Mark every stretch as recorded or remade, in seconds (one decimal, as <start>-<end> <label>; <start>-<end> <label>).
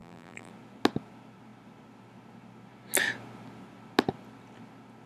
0.0-0.5 remade; 0.5-5.1 recorded